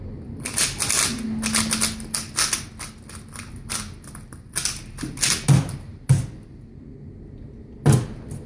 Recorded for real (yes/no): yes